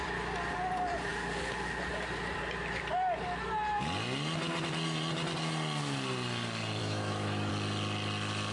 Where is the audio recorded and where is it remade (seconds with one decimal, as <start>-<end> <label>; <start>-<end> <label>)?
0.0-6.8 recorded; 6.8-7.5 remade; 7.5-8.5 recorded